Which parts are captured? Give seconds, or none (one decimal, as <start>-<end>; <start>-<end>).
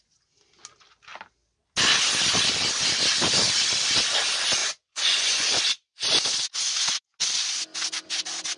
0.0-4.6; 5.6-8.6